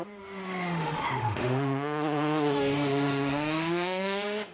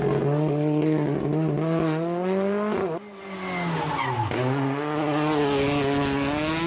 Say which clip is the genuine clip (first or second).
second